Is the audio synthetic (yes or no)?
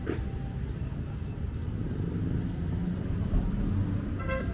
no